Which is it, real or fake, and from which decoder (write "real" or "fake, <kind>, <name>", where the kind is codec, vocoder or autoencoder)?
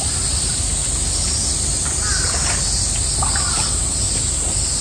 real